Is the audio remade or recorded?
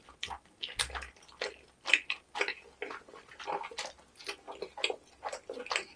recorded